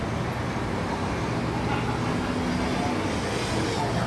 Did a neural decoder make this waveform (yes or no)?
no